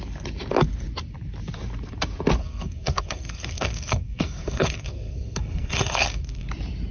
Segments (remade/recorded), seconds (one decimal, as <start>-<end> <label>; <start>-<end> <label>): 0.0-2.4 recorded; 2.4-6.5 remade; 6.5-6.9 recorded